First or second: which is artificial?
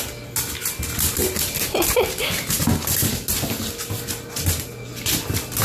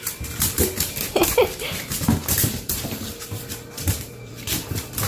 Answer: second